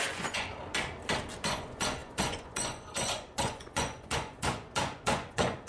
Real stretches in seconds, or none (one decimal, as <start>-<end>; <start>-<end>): 0.5-1.5